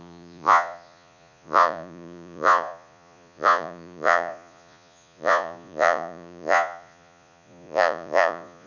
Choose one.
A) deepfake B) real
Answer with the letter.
A